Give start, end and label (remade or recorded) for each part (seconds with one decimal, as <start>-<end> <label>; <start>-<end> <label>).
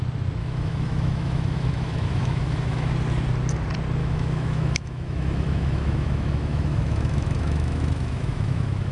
0.0-0.4 recorded; 0.4-2.9 remade; 2.9-4.0 recorded; 4.0-8.9 remade